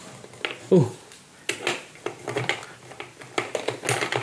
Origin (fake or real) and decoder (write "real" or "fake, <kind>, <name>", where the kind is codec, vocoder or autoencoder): real